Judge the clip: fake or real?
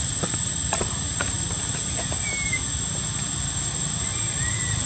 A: real